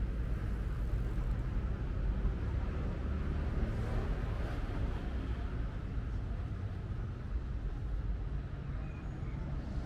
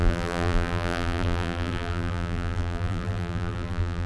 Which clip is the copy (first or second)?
second